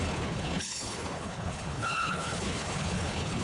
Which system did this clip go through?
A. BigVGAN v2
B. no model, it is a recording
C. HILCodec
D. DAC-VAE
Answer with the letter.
C